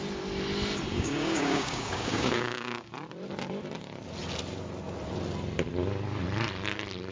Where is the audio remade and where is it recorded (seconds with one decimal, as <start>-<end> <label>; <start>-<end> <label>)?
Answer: 0.0-0.9 recorded; 0.9-2.9 remade; 2.9-7.1 recorded